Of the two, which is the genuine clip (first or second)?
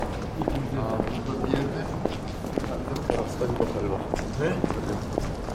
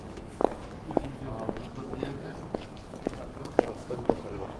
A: first